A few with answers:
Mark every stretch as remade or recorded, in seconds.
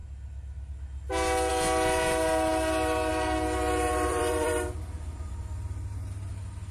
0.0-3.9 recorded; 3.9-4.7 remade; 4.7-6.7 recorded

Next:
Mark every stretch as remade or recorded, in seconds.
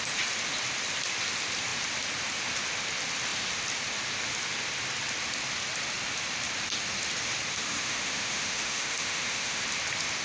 0.0-7.5 recorded; 7.5-9.6 remade; 9.6-10.2 recorded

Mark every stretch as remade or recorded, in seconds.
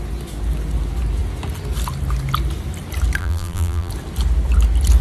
0.0-3.2 recorded; 3.2-3.9 remade; 3.9-5.0 recorded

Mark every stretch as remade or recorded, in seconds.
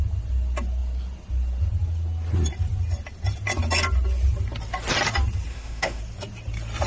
0.0-5.5 recorded; 5.5-6.0 remade; 6.0-6.9 recorded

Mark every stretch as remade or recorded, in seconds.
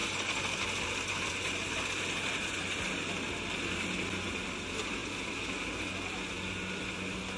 0.0-7.4 recorded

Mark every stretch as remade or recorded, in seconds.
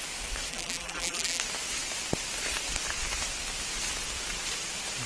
0.0-0.5 recorded; 0.5-1.4 remade; 1.4-5.1 recorded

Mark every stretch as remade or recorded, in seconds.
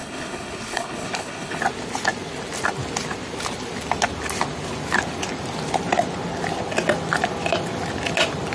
0.0-1.6 remade; 1.6-8.5 recorded